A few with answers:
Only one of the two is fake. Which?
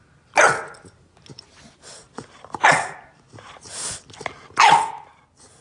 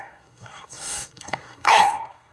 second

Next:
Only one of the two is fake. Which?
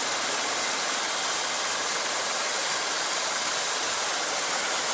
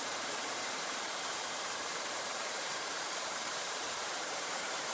second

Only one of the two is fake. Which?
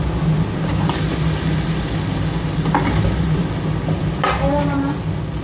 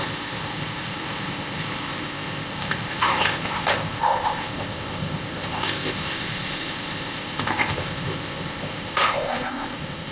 second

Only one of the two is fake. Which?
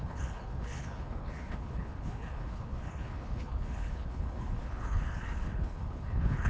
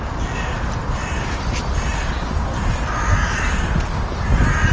first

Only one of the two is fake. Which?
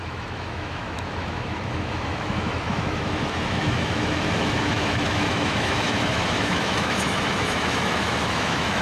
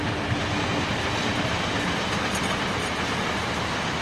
first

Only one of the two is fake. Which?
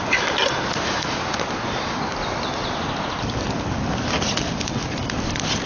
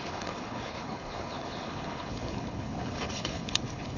second